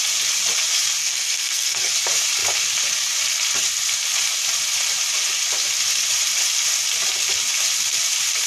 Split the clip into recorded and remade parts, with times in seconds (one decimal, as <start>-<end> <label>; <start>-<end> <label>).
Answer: 0.0-1.0 recorded; 1.0-1.9 remade; 1.9-8.5 recorded